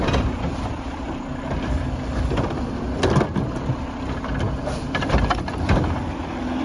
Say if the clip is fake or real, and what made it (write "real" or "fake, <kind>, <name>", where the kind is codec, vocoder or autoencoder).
fake, vocoder, BigVGAN v2